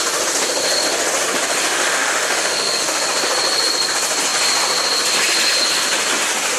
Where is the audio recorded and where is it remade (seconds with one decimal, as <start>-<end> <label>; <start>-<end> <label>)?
0.0-1.7 recorded; 1.7-3.0 remade; 3.0-6.6 recorded